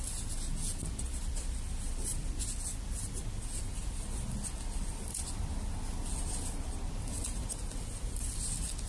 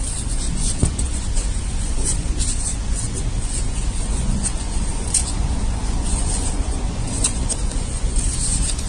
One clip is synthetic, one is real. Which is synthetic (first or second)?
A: second